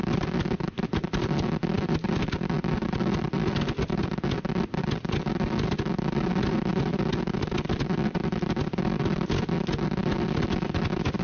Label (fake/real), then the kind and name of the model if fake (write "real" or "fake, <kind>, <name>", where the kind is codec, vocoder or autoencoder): real